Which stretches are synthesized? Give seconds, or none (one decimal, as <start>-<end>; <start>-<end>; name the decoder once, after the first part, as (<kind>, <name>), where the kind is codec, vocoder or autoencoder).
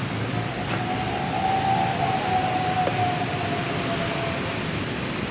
none